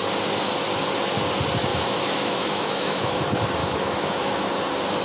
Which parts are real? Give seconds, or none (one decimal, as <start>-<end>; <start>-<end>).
0.0-1.7; 3.2-3.6; 4.5-5.0